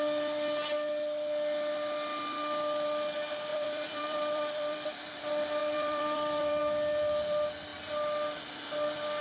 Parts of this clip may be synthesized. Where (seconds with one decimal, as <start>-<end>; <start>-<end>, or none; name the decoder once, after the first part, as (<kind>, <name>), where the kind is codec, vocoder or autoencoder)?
3.5-5.1 (vocoder, BigVGAN v2); 5.6-6.6